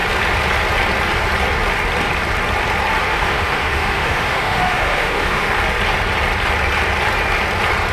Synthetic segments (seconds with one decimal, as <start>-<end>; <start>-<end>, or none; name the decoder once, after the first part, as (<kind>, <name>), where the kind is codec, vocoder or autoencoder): 3.1-5.5 (autoencoder, DAC-VAE)